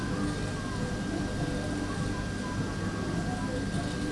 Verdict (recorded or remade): recorded